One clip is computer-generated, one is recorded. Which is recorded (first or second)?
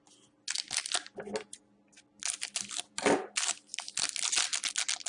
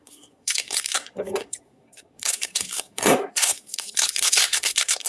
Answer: first